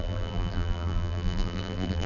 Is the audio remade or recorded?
remade